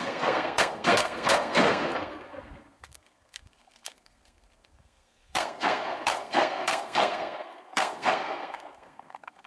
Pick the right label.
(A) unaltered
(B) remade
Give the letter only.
B